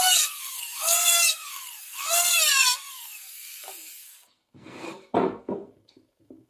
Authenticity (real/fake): fake